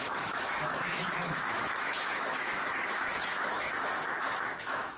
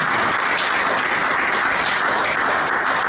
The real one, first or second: second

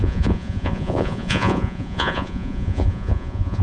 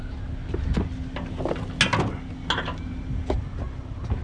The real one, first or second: second